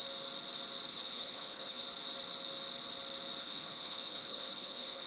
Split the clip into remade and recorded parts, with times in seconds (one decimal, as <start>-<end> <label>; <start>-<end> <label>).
0.0-0.9 recorded; 0.9-1.8 remade; 1.8-3.4 recorded; 3.4-5.1 remade